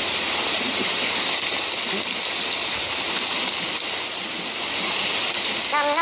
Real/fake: real